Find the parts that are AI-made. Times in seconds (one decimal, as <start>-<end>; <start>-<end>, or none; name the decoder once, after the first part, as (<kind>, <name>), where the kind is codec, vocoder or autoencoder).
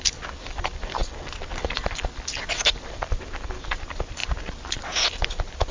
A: 0.0-4.2 (vocoder, BigVGAN v2); 5.2-5.7